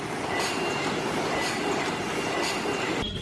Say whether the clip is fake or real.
real